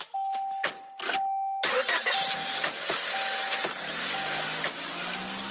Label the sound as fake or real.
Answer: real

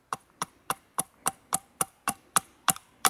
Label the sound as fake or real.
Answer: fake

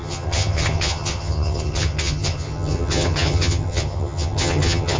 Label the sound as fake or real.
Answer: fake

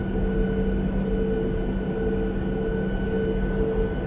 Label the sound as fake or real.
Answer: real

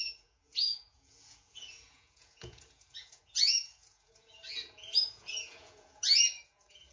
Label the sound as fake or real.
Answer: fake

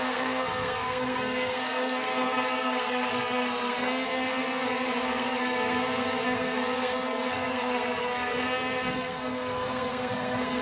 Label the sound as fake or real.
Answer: fake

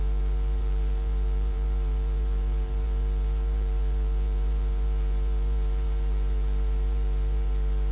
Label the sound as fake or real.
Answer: fake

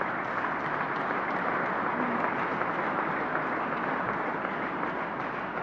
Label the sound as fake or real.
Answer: real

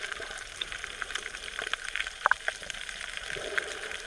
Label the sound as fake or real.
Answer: fake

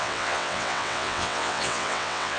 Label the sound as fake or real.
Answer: fake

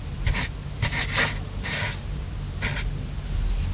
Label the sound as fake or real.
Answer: real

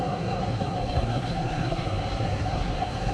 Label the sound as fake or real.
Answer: fake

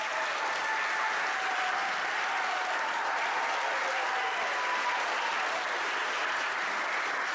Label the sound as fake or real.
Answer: real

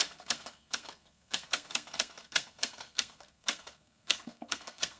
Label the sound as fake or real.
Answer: fake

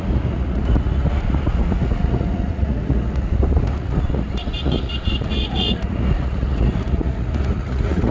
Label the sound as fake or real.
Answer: fake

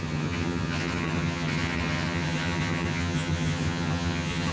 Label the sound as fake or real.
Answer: fake